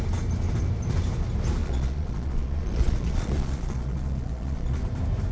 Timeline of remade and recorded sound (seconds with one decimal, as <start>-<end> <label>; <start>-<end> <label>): 0.0-1.6 recorded; 1.6-4.8 remade; 4.8-5.3 recorded

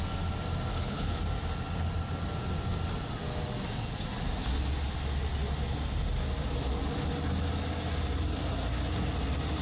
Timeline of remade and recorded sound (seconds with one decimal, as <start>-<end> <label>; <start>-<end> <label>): 0.0-0.7 recorded; 0.7-1.2 remade; 1.2-9.6 recorded